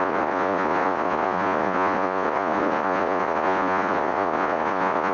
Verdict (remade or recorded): remade